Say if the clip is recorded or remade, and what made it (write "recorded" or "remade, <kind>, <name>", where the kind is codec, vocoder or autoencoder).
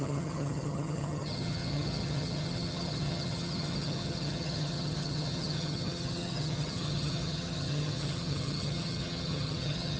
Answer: remade, vocoder, HiFi-GAN